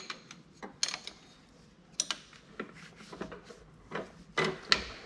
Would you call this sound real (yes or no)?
yes